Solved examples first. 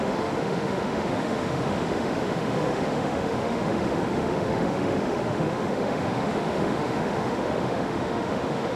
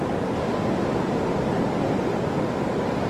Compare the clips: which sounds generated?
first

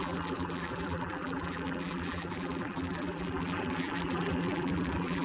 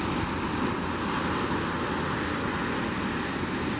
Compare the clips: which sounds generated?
first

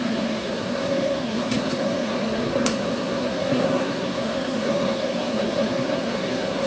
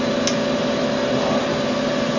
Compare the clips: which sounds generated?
first